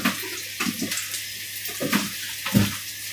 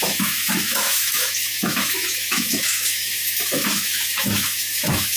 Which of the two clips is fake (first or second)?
second